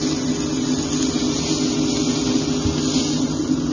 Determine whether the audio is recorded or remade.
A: recorded